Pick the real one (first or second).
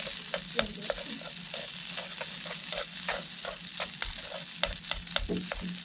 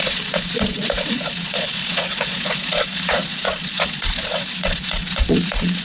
first